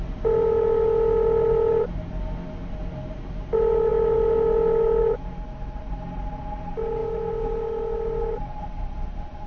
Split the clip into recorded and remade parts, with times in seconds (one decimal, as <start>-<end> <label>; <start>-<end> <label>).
0.0-9.5 recorded